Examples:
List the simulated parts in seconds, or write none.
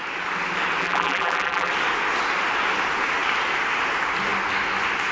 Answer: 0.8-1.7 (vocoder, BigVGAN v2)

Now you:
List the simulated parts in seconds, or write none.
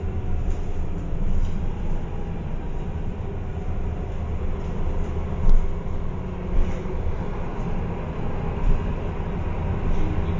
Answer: 3.5-4.3 (vocoder, BigVGAN v2); 7.5-8.9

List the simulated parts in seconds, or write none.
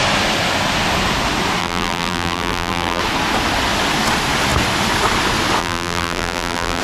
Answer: 1.6-3.0 (vocoder, BigVGAN v2); 5.6-6.8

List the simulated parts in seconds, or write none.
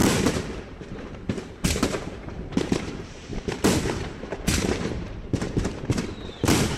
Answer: 0.6-3.3 (vocoder, BigVGAN v2); 4.0-6.8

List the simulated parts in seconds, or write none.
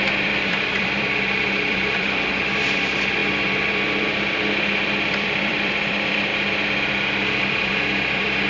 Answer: 0.0-6.3 (vocoder, BigVGAN v2); 7.4-8.5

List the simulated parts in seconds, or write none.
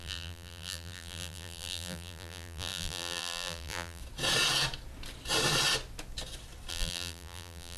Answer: 0.0-4.0 (vocoder, BigVGAN v2); 6.7-7.8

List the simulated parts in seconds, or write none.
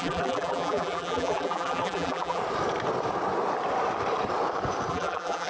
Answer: 0.0-2.4 (vocoder, BigVGAN v2); 4.9-5.5